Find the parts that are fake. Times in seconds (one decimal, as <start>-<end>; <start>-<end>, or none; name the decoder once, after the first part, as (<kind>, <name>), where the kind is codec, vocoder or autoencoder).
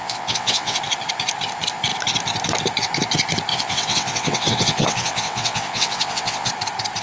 0.0-0.8 (vocoder, WaveNeXt); 3.5-6.5